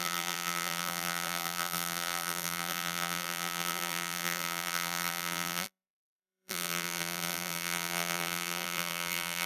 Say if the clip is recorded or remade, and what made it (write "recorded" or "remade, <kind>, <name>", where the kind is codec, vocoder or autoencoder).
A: remade, vocoder, BigVGAN v2